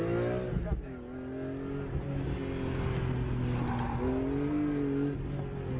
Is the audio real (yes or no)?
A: yes